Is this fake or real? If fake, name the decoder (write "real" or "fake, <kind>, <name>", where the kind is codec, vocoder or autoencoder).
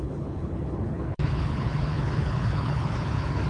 fake, codec, HILCodec